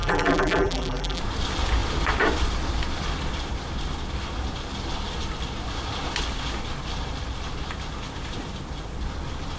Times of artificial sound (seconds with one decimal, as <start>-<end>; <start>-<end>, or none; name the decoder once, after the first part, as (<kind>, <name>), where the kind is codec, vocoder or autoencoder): 0.0-1.2 (vocoder, BigVGAN v2)